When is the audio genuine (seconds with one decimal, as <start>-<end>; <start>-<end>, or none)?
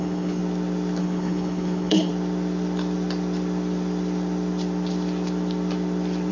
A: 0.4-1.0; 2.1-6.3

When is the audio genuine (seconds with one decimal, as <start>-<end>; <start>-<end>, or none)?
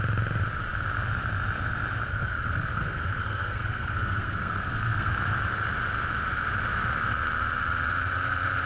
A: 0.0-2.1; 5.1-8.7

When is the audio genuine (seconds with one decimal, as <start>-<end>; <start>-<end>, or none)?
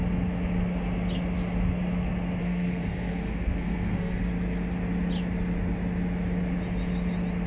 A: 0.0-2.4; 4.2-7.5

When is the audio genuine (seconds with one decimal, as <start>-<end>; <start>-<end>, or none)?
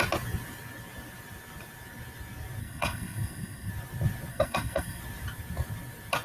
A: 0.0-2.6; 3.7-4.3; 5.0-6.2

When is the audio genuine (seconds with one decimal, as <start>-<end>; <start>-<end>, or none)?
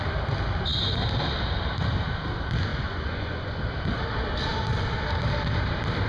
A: 0.0-2.7; 3.6-6.1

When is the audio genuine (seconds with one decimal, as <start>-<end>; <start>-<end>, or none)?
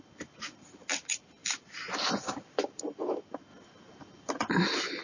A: 0.0-1.4; 3.0-5.0